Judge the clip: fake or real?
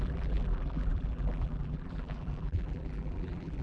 fake